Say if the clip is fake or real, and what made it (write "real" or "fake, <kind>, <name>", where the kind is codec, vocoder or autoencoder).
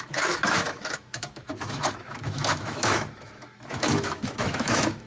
fake, autoencoder, DAC-VAE